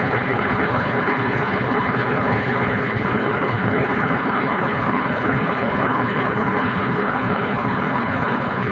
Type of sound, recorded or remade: remade